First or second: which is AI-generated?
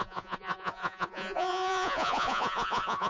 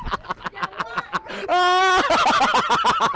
first